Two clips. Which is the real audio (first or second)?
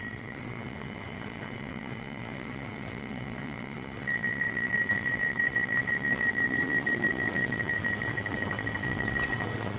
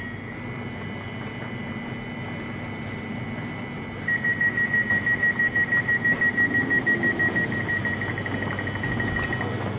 second